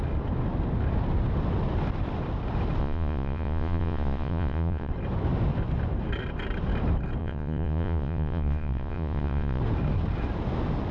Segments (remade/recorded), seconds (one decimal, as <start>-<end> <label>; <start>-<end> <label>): 0.0-2.8 recorded; 2.8-4.9 remade; 4.9-7.2 recorded; 7.2-9.6 remade; 9.6-10.9 recorded